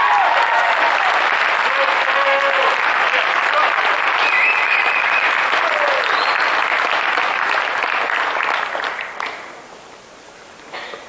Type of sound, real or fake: real